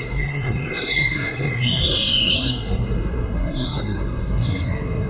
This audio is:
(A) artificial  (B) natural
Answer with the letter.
A